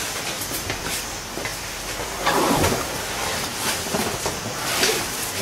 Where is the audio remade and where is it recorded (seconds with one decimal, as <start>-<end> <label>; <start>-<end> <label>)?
0.0-1.5 recorded; 1.5-3.0 remade; 3.0-3.5 recorded; 3.5-5.0 remade; 5.0-5.4 recorded